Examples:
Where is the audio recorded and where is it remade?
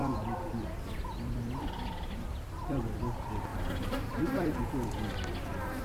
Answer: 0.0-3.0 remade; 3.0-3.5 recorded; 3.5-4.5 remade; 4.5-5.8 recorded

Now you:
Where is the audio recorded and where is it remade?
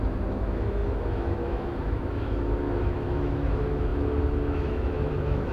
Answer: 0.0-5.5 remade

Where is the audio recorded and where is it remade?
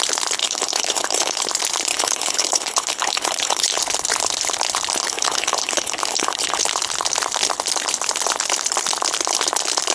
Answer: 0.0-0.4 recorded; 0.4-1.4 remade; 1.4-1.9 recorded; 1.9-3.8 remade; 3.8-5.0 recorded; 5.0-6.6 remade; 6.6-9.9 recorded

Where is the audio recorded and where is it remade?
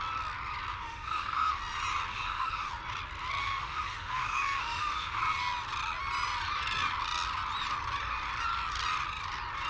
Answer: 0.0-0.7 recorded; 0.7-1.6 remade; 1.6-2.1 recorded; 2.1-2.7 remade; 2.7-3.4 recorded; 3.4-5.2 remade; 5.2-9.7 recorded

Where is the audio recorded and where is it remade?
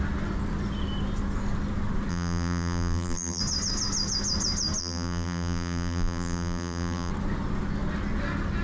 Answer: 0.0-2.1 recorded; 2.1-3.4 remade; 3.4-4.8 recorded; 4.8-7.1 remade; 7.1-8.6 recorded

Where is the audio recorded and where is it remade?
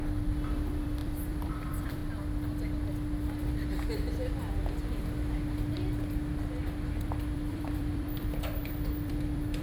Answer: 0.0-2.0 remade; 2.0-6.9 recorded; 6.9-9.6 remade